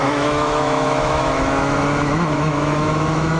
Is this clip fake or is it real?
fake